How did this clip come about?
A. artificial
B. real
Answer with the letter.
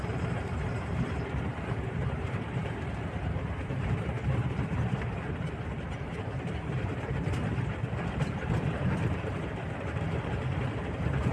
A